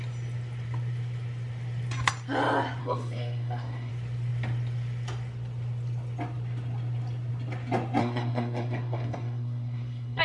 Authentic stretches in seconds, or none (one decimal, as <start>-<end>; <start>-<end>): 0.0-2.8; 3.9-8.0